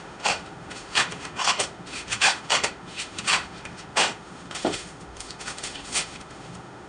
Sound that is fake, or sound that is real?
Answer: fake